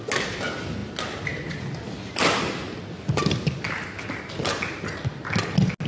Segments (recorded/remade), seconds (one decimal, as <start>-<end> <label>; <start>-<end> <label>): 0.0-5.9 recorded